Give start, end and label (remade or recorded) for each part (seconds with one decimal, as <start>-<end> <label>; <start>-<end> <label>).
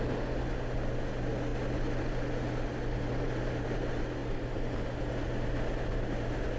0.0-4.2 recorded; 4.2-5.0 remade; 5.0-6.6 recorded